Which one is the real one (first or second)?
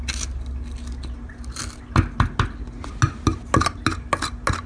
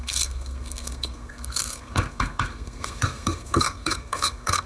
first